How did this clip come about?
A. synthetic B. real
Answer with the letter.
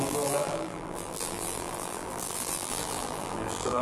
A